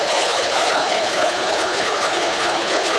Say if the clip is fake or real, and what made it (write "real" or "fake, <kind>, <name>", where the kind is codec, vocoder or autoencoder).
fake, codec, HILCodec